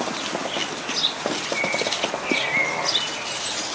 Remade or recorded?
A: recorded